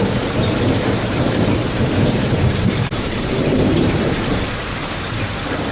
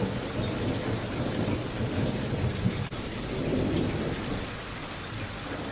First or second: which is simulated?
first